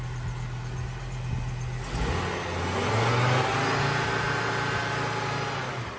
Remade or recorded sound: recorded